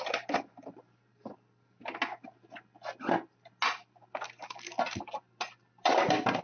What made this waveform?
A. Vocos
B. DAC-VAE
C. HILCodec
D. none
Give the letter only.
D